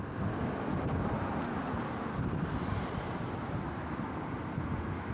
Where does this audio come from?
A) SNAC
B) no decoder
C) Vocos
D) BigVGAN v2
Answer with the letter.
B